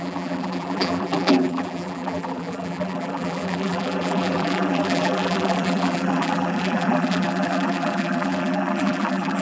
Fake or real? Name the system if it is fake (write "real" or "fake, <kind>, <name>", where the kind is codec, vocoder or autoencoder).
fake, vocoder, BigVGAN v2